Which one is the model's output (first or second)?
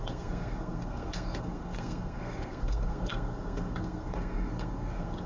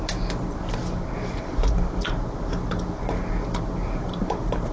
first